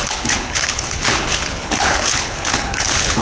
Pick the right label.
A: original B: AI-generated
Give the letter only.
B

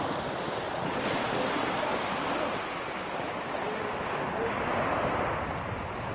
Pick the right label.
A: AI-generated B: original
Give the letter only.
B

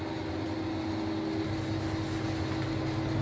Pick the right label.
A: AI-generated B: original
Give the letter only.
B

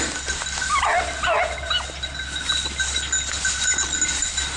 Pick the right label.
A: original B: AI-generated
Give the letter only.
A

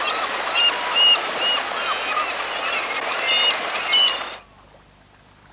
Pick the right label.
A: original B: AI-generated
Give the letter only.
A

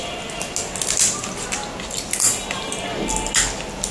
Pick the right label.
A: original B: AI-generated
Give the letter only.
A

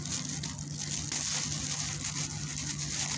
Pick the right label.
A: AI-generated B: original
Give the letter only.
B